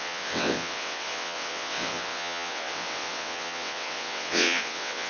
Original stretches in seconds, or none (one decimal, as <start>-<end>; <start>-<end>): none